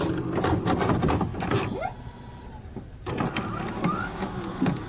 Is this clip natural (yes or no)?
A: yes